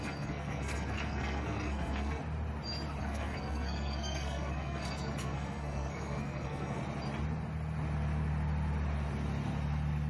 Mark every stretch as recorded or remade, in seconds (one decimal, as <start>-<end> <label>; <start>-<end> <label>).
0.0-2.2 remade; 2.2-3.0 recorded; 3.0-6.8 remade; 6.8-10.1 recorded